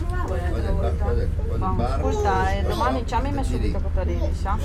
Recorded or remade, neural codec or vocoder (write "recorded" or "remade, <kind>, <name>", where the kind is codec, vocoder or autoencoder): recorded